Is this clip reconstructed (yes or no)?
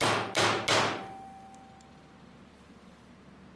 no